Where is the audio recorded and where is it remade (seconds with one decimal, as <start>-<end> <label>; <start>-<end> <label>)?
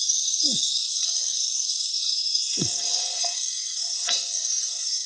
0.0-5.1 remade